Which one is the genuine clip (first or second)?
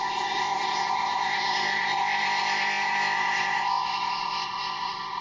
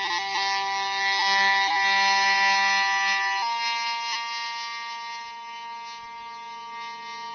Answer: second